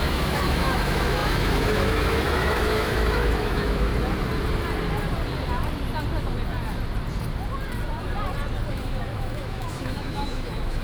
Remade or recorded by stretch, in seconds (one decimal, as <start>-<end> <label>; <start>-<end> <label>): 0.0-3.9 remade; 3.9-8.7 recorded; 8.7-10.8 remade